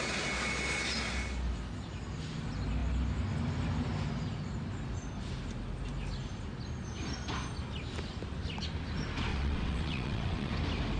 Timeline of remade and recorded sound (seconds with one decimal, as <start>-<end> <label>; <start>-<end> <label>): 0.0-9.3 recorded; 9.3-10.5 remade; 10.5-11.0 recorded